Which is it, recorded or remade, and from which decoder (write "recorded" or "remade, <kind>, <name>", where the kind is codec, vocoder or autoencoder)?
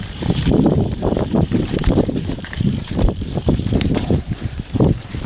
remade, vocoder, BigVGAN v2